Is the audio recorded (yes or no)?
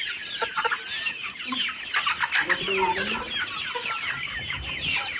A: yes